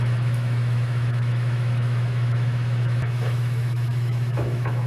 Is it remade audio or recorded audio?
remade